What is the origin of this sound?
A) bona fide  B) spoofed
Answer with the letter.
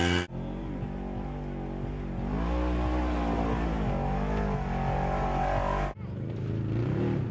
A